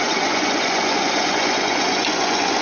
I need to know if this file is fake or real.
fake